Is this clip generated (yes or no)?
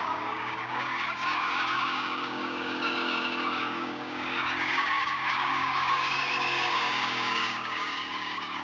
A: yes